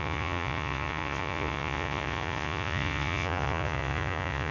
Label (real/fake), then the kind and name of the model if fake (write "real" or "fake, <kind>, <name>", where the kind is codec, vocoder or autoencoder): fake, vocoder, Vocos